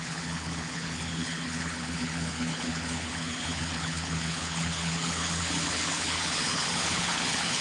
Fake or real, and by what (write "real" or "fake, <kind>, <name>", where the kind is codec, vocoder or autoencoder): fake, codec, HILCodec